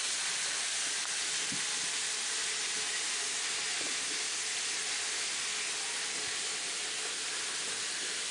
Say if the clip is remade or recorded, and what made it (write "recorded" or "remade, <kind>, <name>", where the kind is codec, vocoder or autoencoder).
recorded